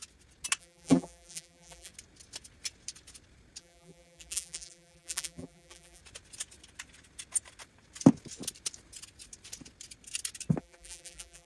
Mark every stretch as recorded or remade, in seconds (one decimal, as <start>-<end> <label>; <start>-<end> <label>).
0.0-0.6 recorded; 0.6-1.9 remade; 1.9-3.6 recorded; 3.6-6.0 remade; 6.0-10.6 recorded; 10.6-11.5 remade